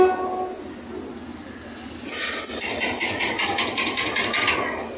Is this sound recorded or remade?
recorded